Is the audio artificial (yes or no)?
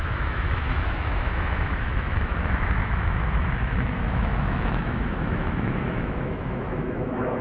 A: yes